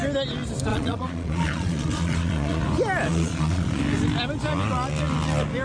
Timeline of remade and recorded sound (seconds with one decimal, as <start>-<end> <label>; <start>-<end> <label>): 0.0-0.7 recorded; 0.7-2.6 remade; 2.6-3.1 recorded; 3.1-3.8 remade; 3.8-5.6 recorded